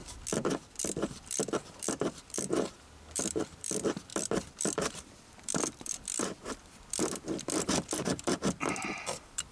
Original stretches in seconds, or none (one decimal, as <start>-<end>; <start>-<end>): 0.0-0.8